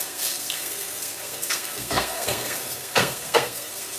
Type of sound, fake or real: fake